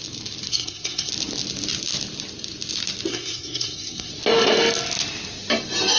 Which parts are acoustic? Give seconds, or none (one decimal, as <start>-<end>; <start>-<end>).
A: 0.0-0.5; 1.1-3.1; 4.1-6.0